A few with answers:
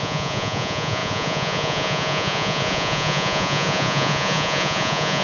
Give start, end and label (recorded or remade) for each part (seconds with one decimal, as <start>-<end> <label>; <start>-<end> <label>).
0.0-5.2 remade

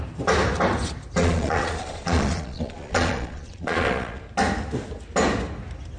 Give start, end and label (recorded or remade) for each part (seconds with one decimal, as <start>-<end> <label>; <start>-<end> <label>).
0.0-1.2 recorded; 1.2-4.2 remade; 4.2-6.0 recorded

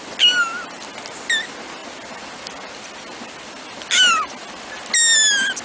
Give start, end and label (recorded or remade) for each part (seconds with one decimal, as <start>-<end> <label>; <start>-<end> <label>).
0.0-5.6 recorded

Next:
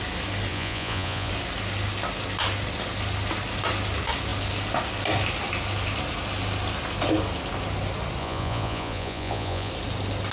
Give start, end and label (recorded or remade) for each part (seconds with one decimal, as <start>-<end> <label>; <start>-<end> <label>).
0.0-0.5 recorded; 0.5-1.3 remade; 1.3-8.2 recorded; 8.2-9.7 remade; 9.7-10.3 recorded

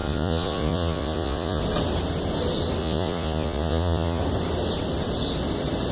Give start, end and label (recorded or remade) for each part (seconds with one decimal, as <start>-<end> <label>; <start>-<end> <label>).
0.0-1.6 remade; 1.6-2.8 recorded; 2.8-4.2 remade; 4.2-5.9 recorded

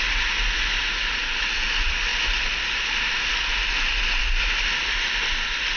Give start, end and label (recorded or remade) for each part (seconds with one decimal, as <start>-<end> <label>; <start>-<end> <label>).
0.0-5.8 recorded

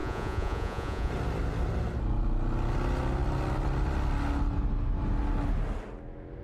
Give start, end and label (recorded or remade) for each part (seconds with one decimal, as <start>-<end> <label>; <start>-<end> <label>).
0.0-1.1 remade; 1.1-6.4 recorded

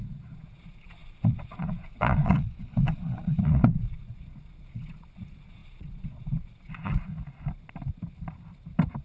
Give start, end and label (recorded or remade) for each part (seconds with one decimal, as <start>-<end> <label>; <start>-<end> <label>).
0.0-7.1 remade; 7.1-9.0 recorded